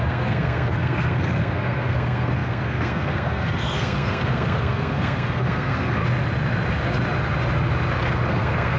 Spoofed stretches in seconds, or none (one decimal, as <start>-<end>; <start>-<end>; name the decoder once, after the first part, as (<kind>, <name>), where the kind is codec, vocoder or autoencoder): 0.0-6.0 (codec, SNAC); 8.3-8.8